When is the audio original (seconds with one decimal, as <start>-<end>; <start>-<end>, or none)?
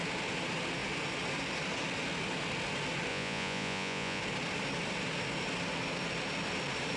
0.0-3.1; 4.2-7.0